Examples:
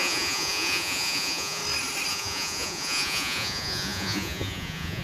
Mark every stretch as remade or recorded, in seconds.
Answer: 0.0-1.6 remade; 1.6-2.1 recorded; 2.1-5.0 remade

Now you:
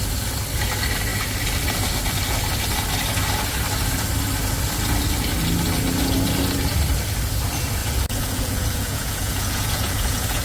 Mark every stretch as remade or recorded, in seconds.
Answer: 0.0-7.8 recorded; 7.8-10.4 remade

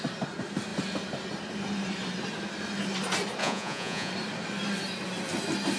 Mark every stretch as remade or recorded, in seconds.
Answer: 0.0-3.4 recorded; 3.4-4.1 remade; 4.1-5.8 recorded

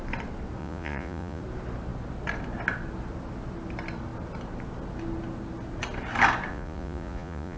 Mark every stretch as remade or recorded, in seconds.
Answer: 0.0-0.6 recorded; 0.6-1.4 remade; 1.4-6.5 recorded; 6.5-7.6 remade

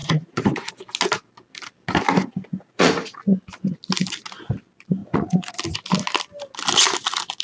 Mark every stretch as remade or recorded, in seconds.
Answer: 0.0-0.7 remade; 0.7-2.5 recorded; 2.5-3.2 remade; 3.2-5.0 recorded; 5.0-5.5 remade; 5.5-7.4 recorded

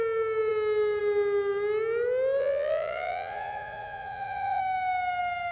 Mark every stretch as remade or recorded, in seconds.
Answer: 0.0-2.4 recorded; 2.4-4.6 remade; 4.6-5.5 recorded